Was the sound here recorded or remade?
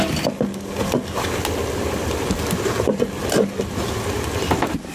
recorded